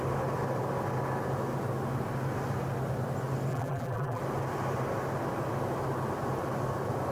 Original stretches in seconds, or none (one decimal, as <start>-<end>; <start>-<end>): 0.0-3.5; 4.2-7.1

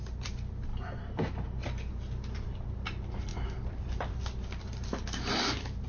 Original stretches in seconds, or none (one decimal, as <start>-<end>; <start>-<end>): 0.0-5.9

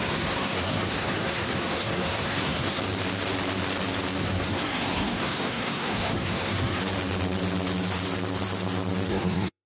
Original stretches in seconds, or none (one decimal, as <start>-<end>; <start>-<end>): 2.8-4.2; 6.8-9.1

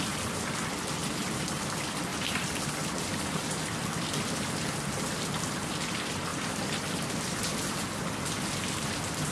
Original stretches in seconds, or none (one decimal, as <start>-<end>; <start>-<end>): 0.0-9.3

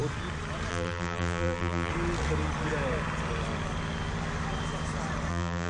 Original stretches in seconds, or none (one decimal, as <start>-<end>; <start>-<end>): 0.0-0.7; 1.9-5.3